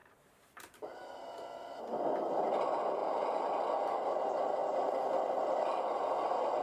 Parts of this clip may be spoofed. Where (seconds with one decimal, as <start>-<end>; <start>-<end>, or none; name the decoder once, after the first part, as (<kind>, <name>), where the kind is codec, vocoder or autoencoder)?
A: 0.0-1.8 (vocoder, BigVGAN v2); 3.0-3.5